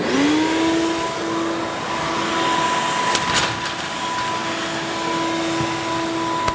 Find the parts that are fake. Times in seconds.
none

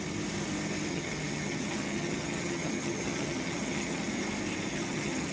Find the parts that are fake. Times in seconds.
0.9-4.1 (vocoder, HiFi-GAN); 4.7-5.3

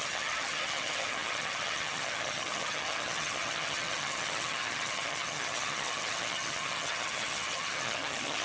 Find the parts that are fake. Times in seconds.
0.0-8.4 (vocoder, HiFi-GAN)

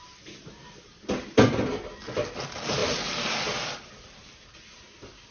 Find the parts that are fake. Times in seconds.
none

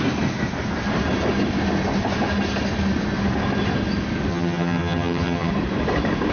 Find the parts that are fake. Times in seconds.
4.3-5.5 (vocoder, HiFi-GAN)

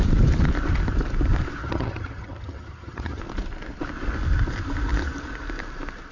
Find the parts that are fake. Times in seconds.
1.6-3.2 (vocoder, HiFi-GAN)

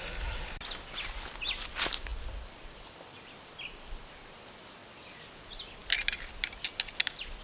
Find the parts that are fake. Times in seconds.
none